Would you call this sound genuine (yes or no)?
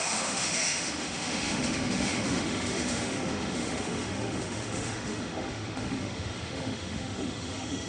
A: no